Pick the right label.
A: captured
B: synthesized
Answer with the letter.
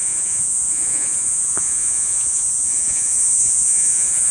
B